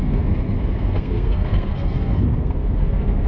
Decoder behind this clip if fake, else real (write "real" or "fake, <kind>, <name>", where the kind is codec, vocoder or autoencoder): fake, codec, SNAC